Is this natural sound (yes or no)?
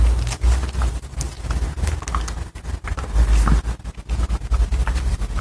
yes